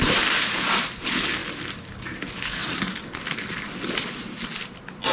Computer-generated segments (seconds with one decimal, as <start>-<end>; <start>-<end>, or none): none